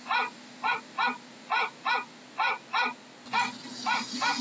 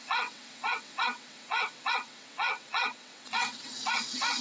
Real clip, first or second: first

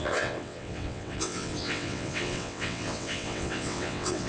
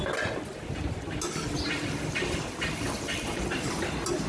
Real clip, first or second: second